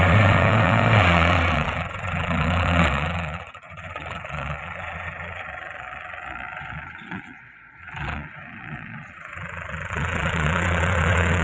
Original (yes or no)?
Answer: no